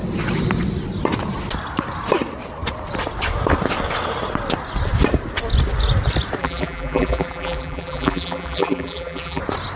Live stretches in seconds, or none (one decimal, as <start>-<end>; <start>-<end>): 0.0-6.4; 9.4-9.8